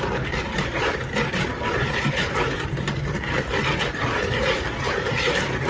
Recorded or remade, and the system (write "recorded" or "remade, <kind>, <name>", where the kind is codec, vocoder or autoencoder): remade, vocoder, BigVGAN v2